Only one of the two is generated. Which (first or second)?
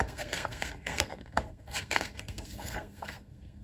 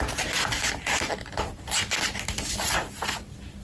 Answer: first